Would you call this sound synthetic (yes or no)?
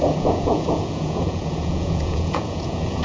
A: yes